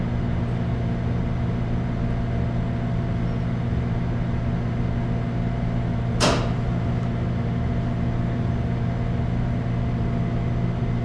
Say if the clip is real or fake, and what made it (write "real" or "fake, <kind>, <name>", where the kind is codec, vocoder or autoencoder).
real